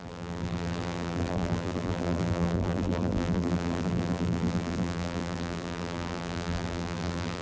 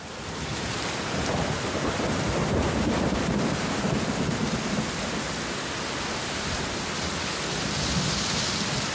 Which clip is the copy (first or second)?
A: first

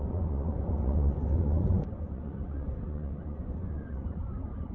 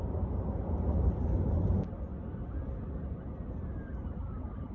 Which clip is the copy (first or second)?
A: first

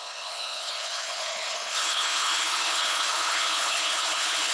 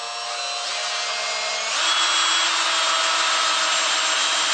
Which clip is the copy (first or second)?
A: first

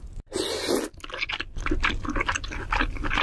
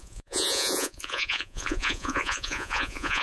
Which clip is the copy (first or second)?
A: second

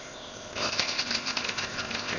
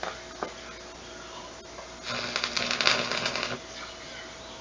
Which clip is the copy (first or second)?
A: first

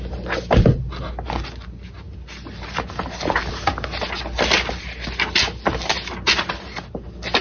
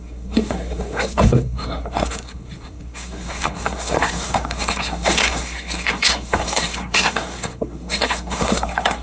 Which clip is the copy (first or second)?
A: second